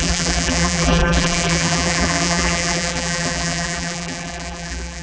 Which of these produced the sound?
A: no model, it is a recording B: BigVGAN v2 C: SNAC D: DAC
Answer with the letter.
B